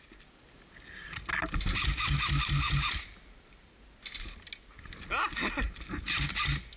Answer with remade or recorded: recorded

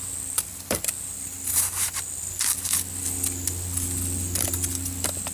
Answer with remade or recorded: remade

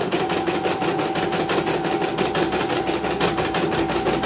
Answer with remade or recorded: recorded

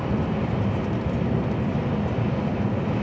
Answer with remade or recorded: recorded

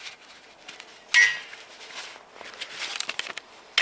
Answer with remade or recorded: recorded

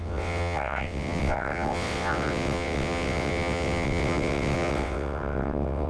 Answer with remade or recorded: remade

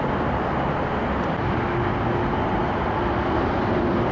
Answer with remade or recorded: recorded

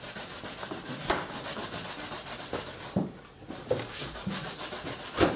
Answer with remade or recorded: recorded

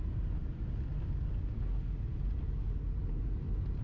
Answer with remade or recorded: recorded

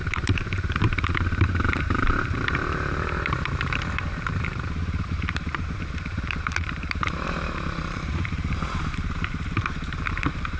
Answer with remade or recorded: remade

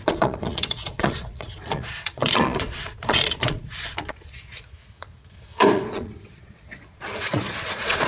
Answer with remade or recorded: remade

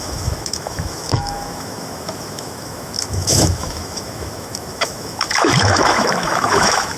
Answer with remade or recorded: remade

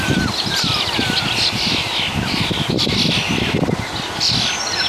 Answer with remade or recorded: recorded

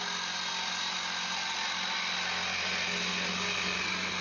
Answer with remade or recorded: recorded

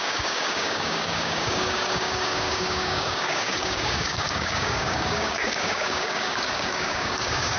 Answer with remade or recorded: remade